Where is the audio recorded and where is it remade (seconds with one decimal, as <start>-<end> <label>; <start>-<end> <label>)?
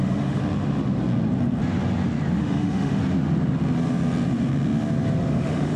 0.0-0.4 remade; 0.4-2.4 recorded; 2.4-3.0 remade; 3.0-5.2 recorded; 5.2-5.8 remade